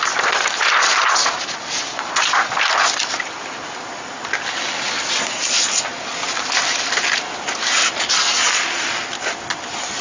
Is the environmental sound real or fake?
real